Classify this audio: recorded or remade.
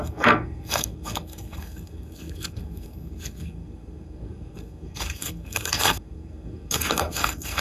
remade